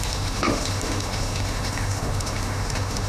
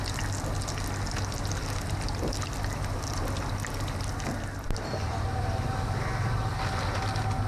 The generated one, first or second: first